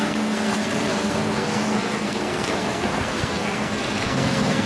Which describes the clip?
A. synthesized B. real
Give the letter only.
A